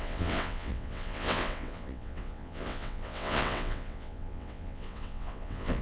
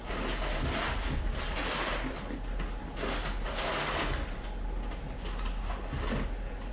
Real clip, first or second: second